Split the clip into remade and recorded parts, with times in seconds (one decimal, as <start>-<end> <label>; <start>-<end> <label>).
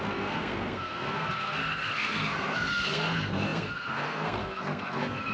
0.0-5.3 remade